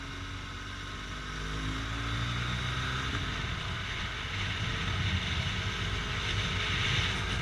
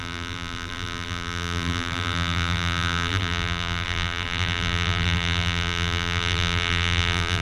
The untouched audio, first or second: first